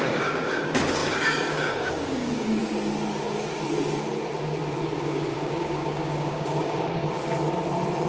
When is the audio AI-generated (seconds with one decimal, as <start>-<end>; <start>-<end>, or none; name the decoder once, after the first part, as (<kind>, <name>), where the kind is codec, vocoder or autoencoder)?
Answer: 0.0-2.6 (codec, DAC); 5.0-7.0